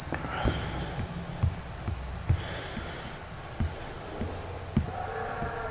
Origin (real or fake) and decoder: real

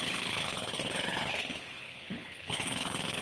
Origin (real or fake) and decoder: fake, codec, HILCodec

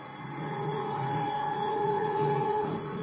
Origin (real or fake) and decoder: fake, vocoder, Vocos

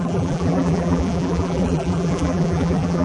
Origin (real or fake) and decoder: fake, vocoder, BigVGAN v2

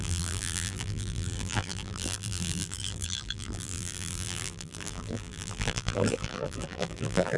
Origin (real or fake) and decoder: fake, vocoder, BigVGAN v2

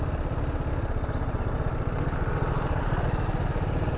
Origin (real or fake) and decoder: real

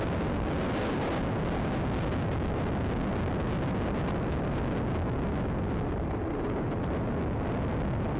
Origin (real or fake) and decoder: real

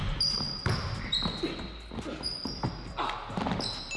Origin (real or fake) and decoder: real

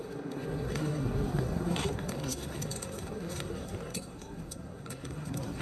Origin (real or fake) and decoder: fake, codec, SNAC